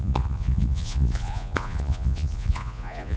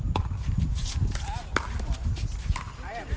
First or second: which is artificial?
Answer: first